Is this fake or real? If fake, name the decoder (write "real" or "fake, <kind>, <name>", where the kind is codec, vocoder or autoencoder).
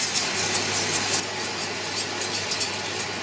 real